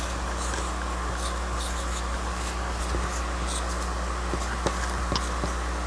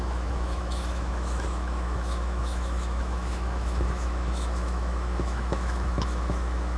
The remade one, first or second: second